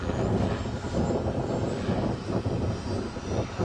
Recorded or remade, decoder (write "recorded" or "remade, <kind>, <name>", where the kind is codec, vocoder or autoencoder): recorded